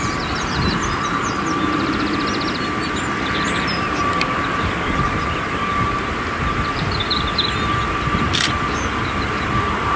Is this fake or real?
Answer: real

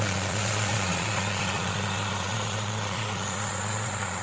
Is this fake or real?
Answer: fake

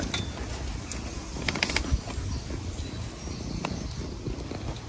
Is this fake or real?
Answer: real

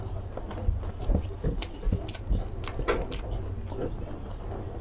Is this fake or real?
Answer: real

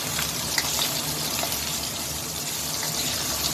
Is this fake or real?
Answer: real